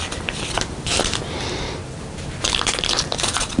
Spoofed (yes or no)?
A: yes